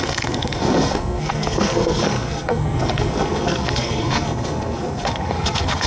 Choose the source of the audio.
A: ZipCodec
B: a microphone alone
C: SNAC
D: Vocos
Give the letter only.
C